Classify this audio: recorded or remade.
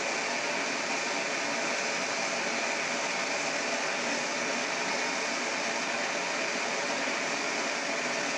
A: recorded